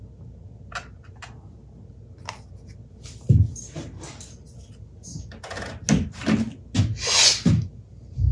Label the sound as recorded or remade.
recorded